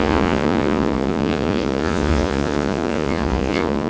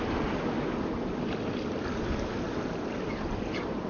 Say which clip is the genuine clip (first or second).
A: second